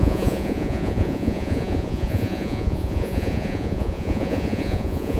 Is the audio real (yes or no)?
no